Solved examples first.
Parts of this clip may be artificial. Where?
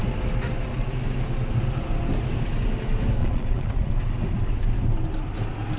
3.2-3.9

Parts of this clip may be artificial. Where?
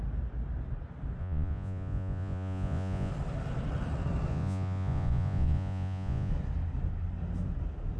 1.2-3.1; 4.3-6.3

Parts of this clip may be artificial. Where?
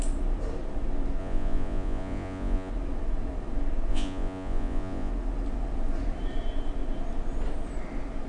1.2-2.7; 3.9-5.1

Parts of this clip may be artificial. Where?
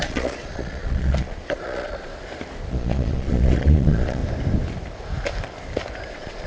0.0-2.1; 2.7-4.2; 6.1-6.5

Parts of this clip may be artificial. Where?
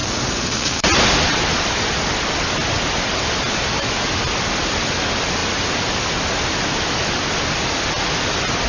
none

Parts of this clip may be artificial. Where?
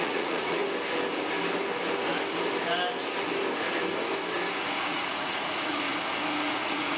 0.0-0.6; 4.8-5.9; 6.5-7.0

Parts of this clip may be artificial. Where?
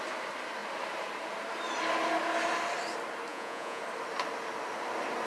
3.3-3.8